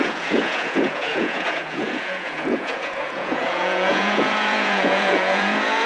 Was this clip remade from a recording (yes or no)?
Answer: yes